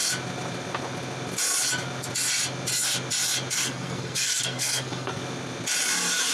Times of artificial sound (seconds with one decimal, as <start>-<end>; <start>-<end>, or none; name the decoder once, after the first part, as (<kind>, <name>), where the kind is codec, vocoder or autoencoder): 3.5-5.2 (codec, SNAC)